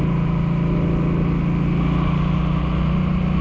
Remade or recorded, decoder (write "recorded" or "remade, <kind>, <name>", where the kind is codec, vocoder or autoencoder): recorded